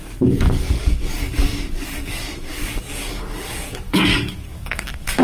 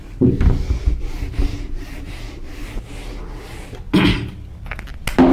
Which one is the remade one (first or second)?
first